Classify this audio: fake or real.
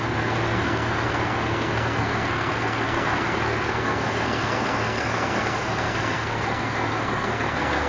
fake